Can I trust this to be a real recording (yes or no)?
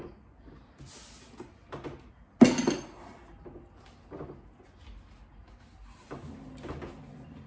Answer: yes